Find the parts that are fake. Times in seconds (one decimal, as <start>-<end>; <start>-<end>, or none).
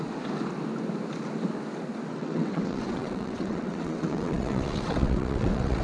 2.1-5.8